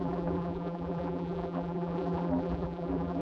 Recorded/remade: remade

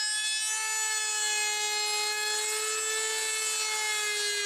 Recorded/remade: recorded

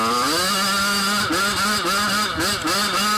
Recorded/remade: recorded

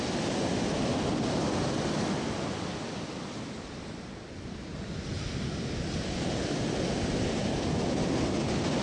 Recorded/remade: recorded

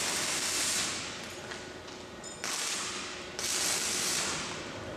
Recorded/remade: recorded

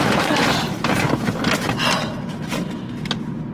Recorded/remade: recorded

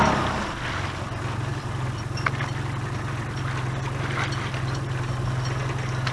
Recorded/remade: recorded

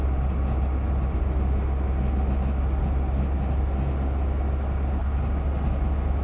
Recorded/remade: recorded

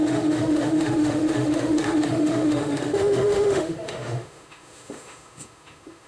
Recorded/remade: remade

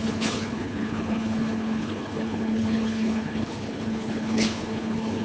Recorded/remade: remade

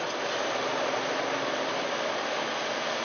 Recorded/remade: recorded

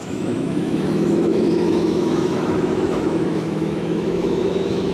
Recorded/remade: remade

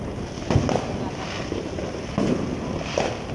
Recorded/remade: recorded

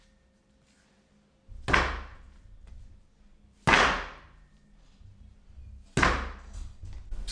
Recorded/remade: recorded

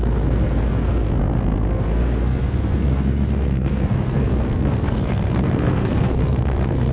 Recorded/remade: remade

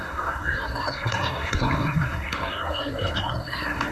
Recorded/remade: remade